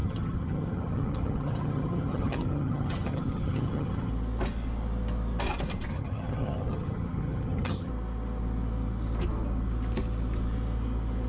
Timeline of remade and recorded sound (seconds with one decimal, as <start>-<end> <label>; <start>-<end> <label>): 0.0-4.1 remade; 4.1-5.9 recorded; 5.9-7.9 remade; 7.9-11.3 recorded